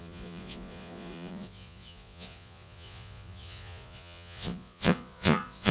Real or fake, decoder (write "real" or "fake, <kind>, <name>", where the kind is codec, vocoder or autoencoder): fake, vocoder, Vocos